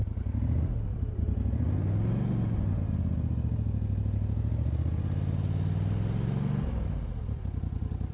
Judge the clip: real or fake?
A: real